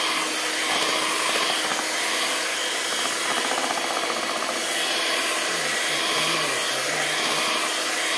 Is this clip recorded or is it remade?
recorded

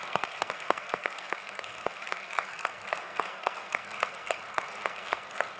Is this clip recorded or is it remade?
remade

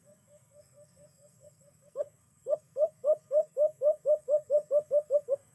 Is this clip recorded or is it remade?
remade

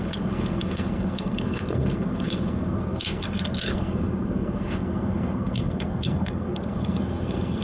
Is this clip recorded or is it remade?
remade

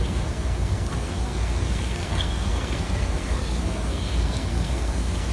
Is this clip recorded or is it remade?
remade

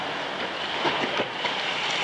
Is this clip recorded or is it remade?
recorded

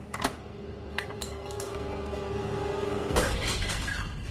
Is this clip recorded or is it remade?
remade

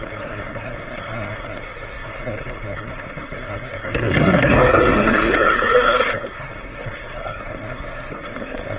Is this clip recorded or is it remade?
remade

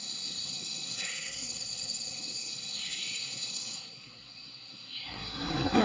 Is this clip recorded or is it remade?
remade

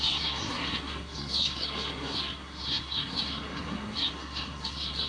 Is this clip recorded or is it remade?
remade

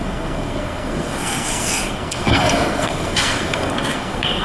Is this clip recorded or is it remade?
remade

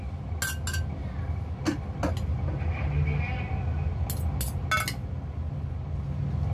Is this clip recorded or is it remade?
recorded